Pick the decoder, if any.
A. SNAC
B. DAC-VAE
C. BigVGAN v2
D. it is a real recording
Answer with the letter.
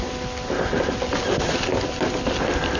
D